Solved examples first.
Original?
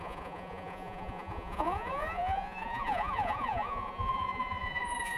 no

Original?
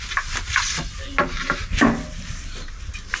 yes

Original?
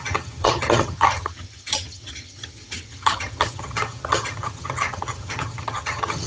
no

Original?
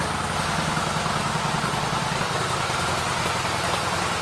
yes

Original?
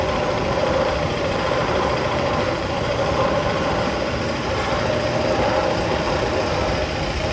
no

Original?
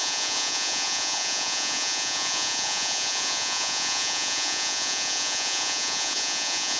no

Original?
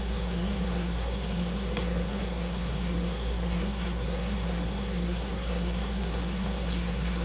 no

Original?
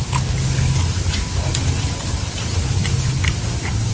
yes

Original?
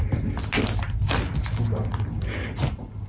yes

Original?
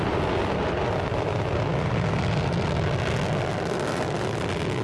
yes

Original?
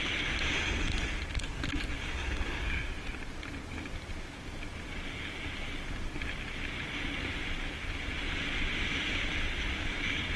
yes